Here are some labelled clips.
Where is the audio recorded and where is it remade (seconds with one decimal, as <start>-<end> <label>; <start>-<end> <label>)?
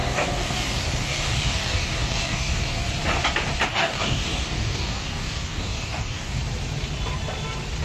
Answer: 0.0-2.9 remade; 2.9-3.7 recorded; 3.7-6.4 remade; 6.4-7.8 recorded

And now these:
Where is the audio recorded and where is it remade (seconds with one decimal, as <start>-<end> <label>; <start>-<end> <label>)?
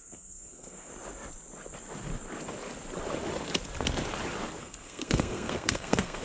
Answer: 0.0-0.9 remade; 0.9-4.6 recorded; 4.6-6.2 remade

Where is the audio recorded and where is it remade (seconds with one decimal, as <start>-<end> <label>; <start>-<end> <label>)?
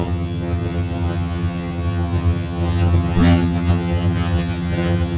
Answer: 0.0-5.2 remade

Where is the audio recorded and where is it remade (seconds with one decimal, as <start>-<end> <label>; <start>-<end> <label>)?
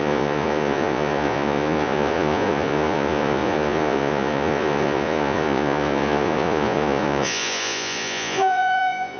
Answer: 0.0-9.2 remade